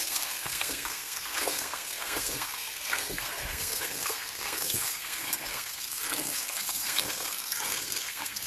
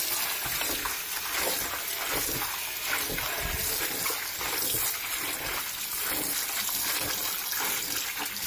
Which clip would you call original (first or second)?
second